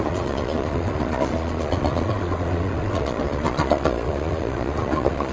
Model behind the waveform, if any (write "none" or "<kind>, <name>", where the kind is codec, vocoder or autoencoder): vocoder, Vocos